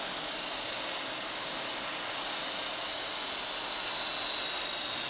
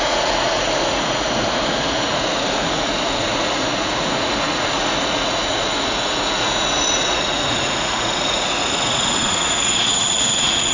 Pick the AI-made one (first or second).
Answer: second